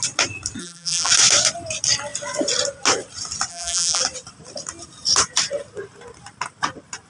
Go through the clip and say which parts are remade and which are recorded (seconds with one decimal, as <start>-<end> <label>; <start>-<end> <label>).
0.0-0.6 recorded; 0.6-1.1 remade; 1.1-3.5 recorded; 3.5-4.0 remade; 4.0-7.1 recorded